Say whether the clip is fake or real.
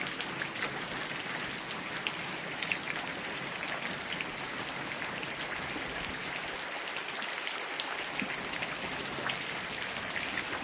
real